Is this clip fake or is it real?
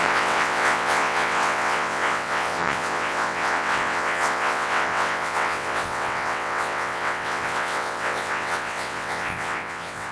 fake